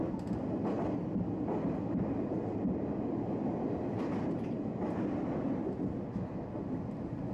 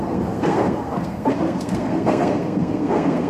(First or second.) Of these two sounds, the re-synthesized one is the second